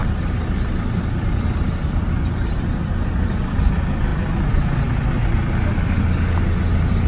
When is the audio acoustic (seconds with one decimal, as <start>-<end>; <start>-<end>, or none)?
0.0-7.1